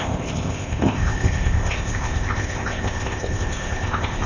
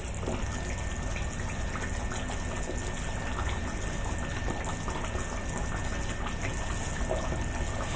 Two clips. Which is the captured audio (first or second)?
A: second